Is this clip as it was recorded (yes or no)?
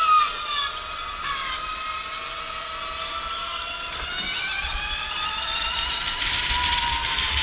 yes